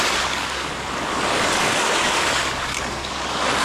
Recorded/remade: remade